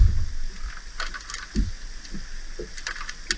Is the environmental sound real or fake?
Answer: real